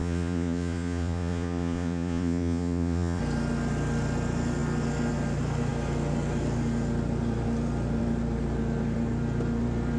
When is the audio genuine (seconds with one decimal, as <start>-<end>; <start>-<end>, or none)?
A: 3.2-10.0